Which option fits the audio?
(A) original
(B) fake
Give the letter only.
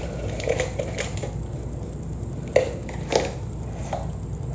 A